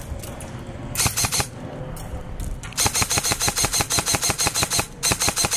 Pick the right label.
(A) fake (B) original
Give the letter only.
A